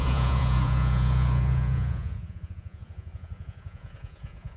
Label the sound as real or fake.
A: fake